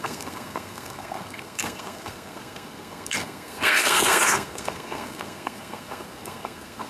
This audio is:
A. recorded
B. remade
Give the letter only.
B